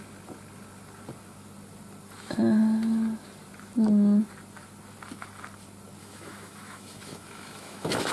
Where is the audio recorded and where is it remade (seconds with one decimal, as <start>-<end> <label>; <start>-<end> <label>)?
0.0-6.0 recorded; 6.0-8.1 remade